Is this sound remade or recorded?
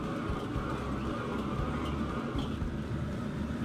recorded